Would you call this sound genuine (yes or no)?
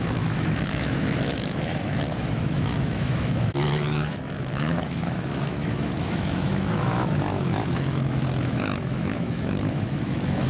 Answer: no